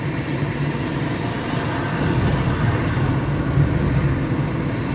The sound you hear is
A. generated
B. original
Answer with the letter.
B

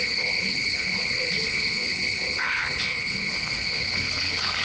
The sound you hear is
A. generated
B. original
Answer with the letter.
A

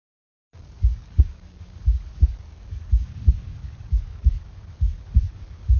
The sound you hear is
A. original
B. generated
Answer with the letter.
B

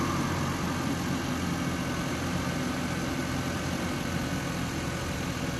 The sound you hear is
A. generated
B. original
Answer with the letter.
B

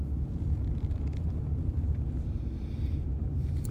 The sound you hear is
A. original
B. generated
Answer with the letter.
A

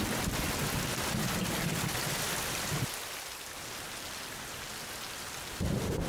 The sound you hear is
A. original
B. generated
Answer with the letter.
A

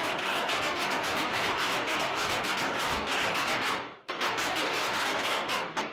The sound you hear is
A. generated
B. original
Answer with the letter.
A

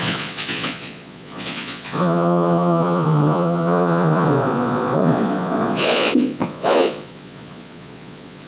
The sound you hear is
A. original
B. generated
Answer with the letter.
B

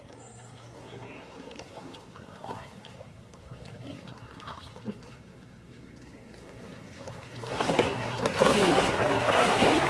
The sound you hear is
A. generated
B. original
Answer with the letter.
A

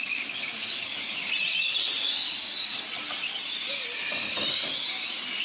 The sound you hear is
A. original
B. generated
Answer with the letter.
A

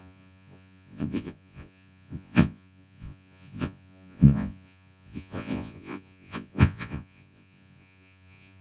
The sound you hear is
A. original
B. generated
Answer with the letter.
B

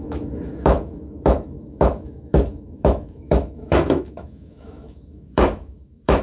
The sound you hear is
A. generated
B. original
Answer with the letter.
A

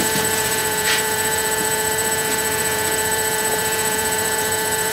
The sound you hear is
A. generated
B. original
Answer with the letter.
A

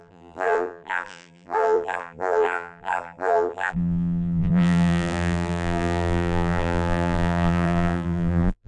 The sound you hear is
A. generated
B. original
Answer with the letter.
A